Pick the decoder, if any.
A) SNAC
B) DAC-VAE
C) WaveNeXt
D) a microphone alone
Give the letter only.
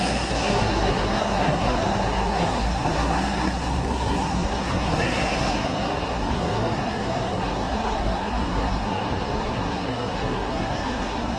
A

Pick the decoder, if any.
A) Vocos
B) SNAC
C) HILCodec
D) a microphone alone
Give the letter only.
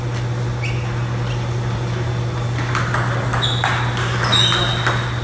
D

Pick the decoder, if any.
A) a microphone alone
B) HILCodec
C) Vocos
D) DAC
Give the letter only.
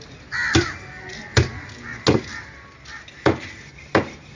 A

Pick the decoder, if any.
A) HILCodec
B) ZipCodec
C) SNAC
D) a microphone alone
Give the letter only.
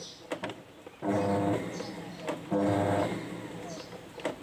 D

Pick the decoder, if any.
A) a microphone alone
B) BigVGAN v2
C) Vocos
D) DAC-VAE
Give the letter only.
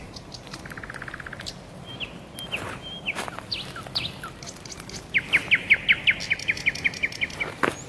A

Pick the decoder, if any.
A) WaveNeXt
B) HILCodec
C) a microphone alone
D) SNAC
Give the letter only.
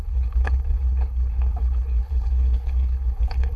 B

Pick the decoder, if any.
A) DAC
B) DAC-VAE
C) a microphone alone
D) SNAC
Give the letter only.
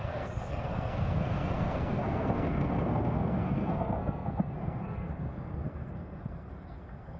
D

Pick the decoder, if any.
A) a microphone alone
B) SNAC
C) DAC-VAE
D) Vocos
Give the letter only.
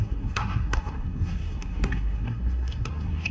B